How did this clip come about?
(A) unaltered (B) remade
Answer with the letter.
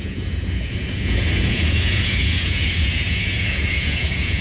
B